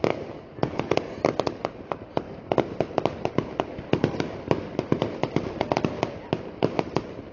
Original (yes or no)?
yes